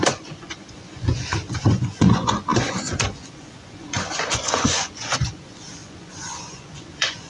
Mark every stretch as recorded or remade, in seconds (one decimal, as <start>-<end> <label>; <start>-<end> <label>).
0.0-7.3 remade